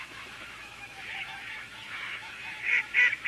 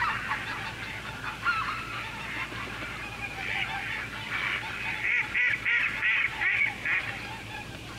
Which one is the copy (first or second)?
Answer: first